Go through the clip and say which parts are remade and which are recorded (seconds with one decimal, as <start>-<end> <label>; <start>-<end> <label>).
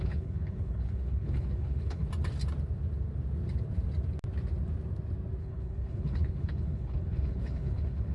0.0-2.0 remade; 2.0-5.4 recorded; 5.4-8.1 remade